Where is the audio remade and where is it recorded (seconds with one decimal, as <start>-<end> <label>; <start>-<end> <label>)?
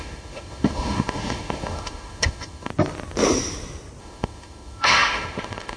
0.0-2.7 remade; 2.7-4.0 recorded; 4.0-5.8 remade